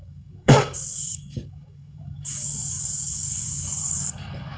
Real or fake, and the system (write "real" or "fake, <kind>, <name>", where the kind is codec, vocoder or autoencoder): fake, codec, DAC